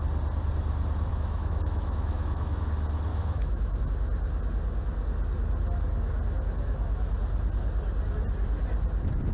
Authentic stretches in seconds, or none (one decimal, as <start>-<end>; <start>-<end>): 0.0-1.1; 2.6-3.1; 3.8-9.3